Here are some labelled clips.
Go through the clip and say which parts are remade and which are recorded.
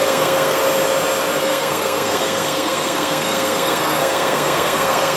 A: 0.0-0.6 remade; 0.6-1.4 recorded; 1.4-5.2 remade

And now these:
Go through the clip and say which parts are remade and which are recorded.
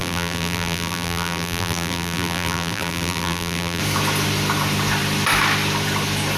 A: 0.0-3.8 remade; 3.8-6.4 recorded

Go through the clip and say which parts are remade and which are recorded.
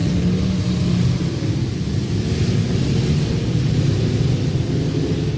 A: 0.0-5.4 recorded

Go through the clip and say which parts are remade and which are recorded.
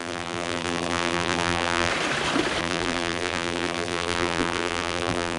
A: 0.0-1.9 remade; 1.9-2.6 recorded; 2.6-5.4 remade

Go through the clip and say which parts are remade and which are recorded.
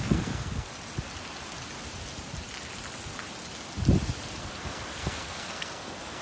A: 0.0-0.7 remade; 0.7-4.4 recorded; 4.4-6.2 remade